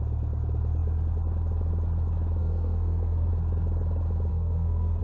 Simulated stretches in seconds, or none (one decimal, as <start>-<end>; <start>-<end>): 2.4-3.3; 4.3-5.0